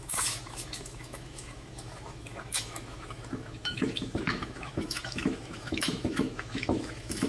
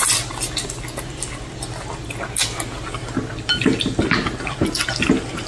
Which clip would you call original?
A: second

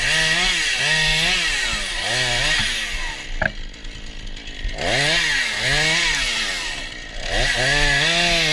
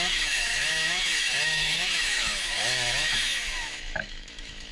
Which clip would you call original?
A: first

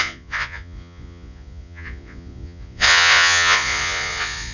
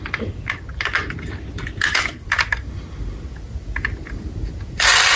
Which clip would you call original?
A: second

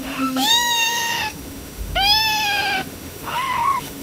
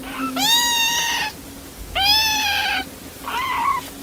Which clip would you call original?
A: second